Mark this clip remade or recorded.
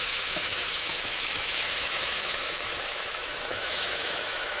remade